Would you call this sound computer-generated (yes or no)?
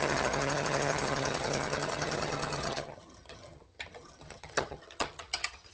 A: yes